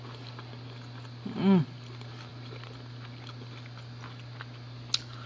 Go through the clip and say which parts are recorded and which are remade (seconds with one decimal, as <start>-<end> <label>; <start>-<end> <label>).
0.0-5.3 recorded